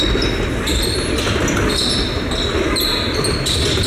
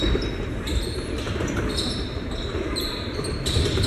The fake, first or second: second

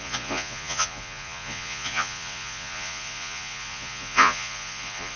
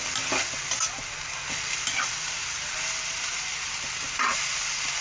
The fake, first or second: first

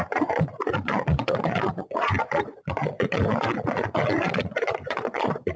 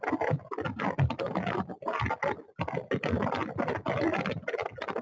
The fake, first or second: first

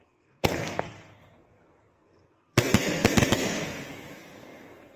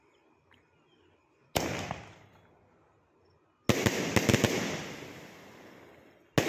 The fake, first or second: first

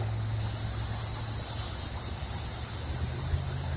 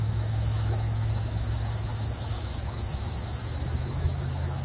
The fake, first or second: second